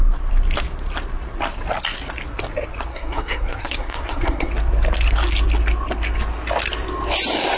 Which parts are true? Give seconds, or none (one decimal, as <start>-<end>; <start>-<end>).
0.0-2.9; 4.5-7.6

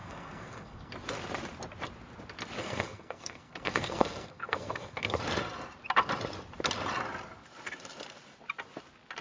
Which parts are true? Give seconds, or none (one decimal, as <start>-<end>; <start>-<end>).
0.9-2.6; 5.2-9.2

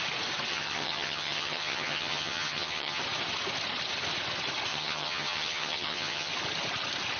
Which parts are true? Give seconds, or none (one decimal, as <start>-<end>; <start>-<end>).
0.0-0.5; 3.0-4.7; 6.3-7.2

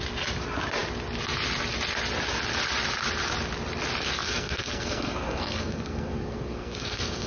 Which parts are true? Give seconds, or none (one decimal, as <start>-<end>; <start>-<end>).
0.0-4.2

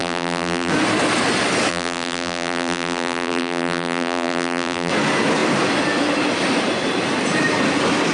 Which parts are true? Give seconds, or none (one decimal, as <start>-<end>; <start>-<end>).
0.7-1.7; 4.9-8.1

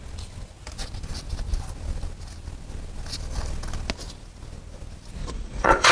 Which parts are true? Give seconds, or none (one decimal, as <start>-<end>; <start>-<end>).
0.0-5.2

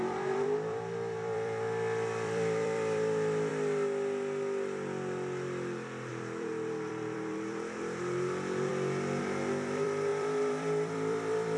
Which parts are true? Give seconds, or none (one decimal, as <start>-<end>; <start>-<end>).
3.5-6.1; 8.7-9.2